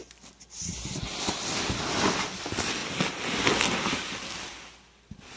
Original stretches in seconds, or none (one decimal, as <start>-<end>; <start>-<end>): 0.0-5.4